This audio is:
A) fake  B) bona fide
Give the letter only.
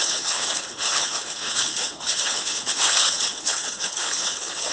A